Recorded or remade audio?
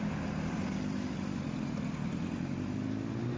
recorded